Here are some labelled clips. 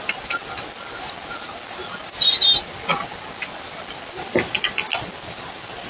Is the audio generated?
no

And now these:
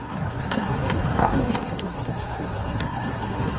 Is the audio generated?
yes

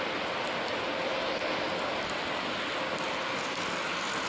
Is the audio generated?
no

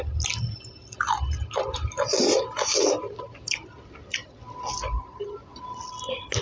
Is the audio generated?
no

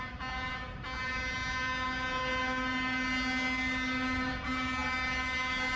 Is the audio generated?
no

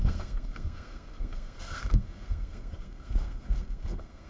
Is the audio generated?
yes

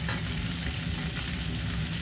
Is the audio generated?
no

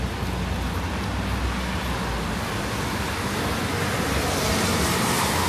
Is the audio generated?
no